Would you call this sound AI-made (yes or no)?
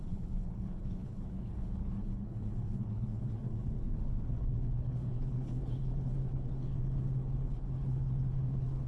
yes